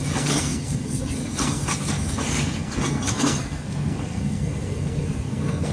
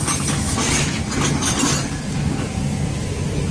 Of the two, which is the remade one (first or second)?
first